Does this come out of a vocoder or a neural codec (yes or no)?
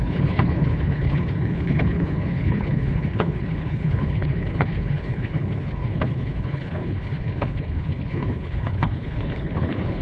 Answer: yes